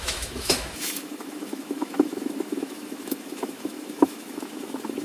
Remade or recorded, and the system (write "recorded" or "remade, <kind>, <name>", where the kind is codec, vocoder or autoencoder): remade, autoencoder, DAC-VAE